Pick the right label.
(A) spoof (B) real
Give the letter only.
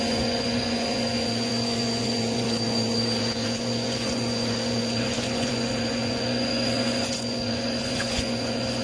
A